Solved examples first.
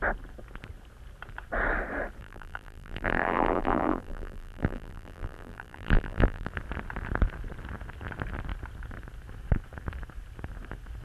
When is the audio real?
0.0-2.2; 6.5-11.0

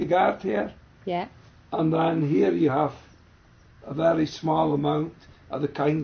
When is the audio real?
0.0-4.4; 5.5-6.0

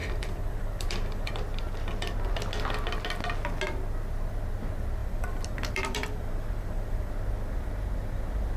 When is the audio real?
1.3-5.0; 7.1-8.6

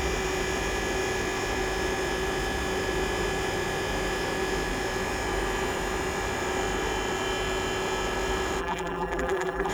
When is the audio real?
0.0-8.6